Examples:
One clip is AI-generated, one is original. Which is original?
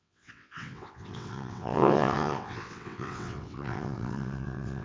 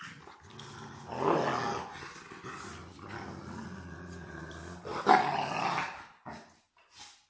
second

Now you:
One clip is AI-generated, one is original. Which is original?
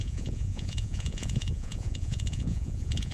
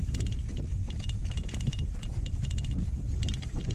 second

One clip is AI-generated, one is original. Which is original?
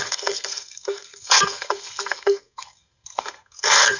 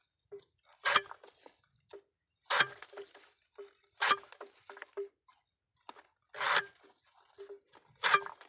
second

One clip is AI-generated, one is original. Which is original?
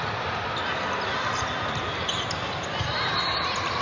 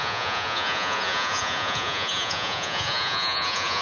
first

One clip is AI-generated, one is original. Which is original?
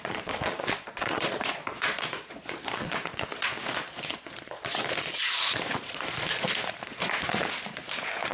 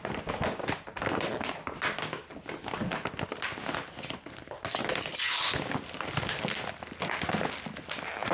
second